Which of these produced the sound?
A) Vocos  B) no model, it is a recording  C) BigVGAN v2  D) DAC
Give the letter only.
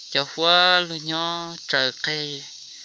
D